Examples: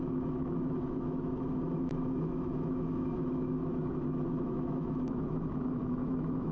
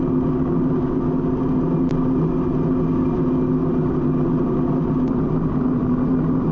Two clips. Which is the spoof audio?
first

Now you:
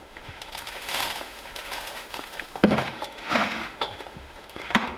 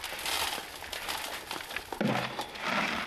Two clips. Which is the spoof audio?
first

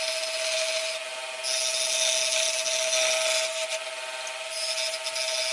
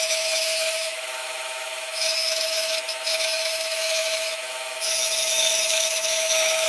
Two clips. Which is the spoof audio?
second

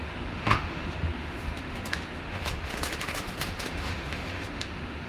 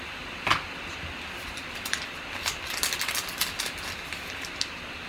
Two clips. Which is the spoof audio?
first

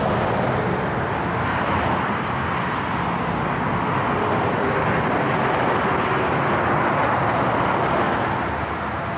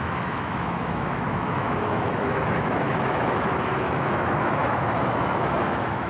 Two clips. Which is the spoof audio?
second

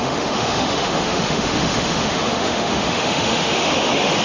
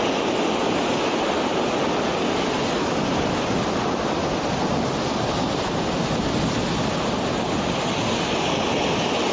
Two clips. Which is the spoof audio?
first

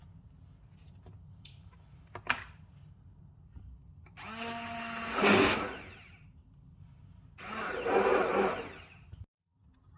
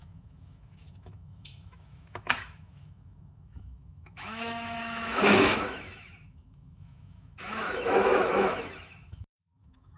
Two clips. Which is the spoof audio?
second